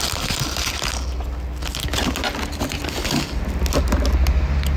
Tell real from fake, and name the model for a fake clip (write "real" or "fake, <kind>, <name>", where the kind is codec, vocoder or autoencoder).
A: real